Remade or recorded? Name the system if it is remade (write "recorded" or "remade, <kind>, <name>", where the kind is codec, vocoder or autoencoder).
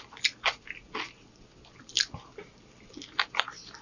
recorded